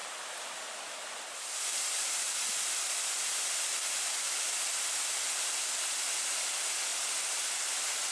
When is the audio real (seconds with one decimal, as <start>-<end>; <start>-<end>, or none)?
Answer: 0.0-1.7; 6.1-6.9; 7.5-8.1